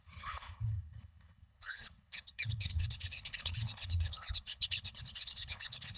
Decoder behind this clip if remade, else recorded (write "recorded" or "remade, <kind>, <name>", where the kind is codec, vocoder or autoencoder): remade, codec, HILCodec